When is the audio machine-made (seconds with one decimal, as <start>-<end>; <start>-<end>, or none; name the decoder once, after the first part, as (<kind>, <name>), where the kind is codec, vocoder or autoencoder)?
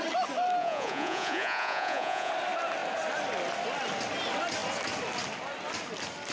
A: 0.6-2.3 (vocoder, Vocos)